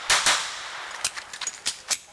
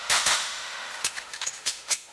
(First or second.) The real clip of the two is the first